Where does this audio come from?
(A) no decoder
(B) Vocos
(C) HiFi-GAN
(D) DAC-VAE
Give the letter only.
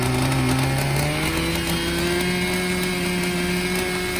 A